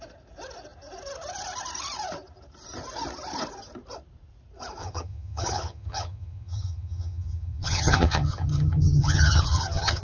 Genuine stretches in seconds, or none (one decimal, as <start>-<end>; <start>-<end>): 0.0-4.8